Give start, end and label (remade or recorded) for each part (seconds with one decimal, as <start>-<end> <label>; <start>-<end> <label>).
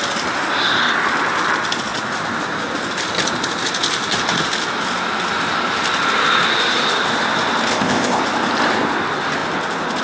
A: 0.0-7.7 recorded; 7.7-8.2 remade; 8.2-10.0 recorded